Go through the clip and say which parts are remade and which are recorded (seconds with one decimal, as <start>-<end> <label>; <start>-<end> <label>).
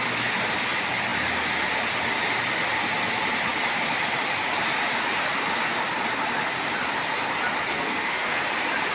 0.0-7.7 recorded; 7.7-8.4 remade; 8.4-8.9 recorded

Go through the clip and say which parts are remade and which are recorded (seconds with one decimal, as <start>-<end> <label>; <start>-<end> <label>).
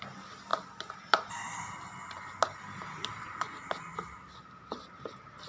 0.0-5.5 recorded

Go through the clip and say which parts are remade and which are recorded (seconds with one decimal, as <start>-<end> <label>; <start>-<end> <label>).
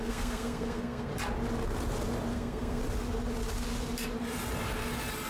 0.0-1.1 remade; 1.1-2.3 recorded; 2.3-2.8 remade; 2.8-5.3 recorded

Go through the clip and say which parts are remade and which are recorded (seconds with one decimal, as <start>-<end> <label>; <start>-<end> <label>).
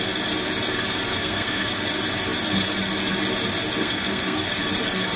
0.0-1.1 recorded; 1.1-1.7 remade; 1.7-3.8 recorded; 3.8-4.5 remade; 4.5-5.2 recorded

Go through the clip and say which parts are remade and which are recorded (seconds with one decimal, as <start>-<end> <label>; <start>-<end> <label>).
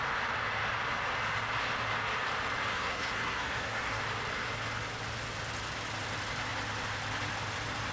0.0-2.7 recorded; 2.7-4.0 remade; 4.0-7.9 recorded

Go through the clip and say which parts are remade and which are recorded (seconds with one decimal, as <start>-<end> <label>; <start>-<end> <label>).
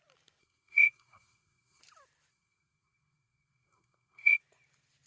0.0-0.4 recorded; 0.4-1.8 remade; 1.8-2.3 recorded; 2.3-4.4 remade; 4.4-5.1 recorded